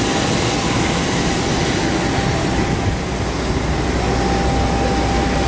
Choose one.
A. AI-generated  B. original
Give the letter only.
B